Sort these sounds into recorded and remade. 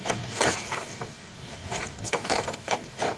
remade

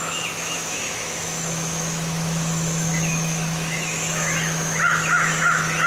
remade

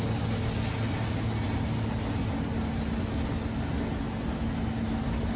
recorded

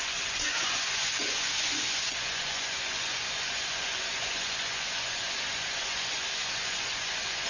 remade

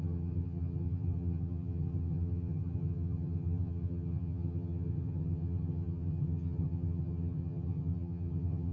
remade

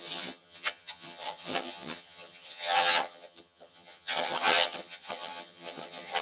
remade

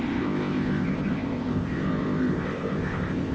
remade